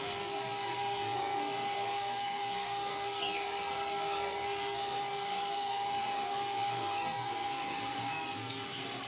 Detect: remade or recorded remade